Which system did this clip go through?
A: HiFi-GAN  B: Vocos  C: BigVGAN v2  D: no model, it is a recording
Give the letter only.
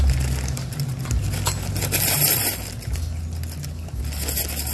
D